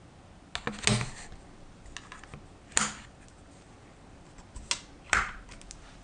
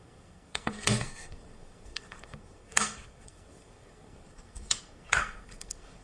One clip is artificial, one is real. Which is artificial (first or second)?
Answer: second